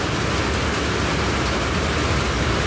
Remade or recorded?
recorded